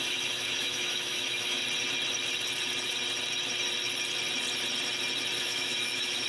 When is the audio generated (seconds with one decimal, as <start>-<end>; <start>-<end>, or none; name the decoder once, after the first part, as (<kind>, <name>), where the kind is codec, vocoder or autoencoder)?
0.0-1.6 (autoencoder, DAC-VAE); 5.4-6.3